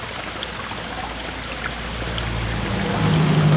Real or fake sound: real